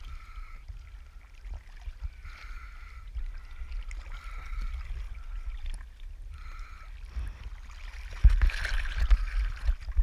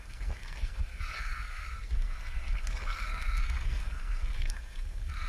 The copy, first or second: second